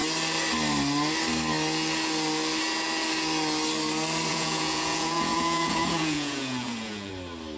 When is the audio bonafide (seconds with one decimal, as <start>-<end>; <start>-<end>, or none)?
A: 0.0-4.3; 7.1-7.6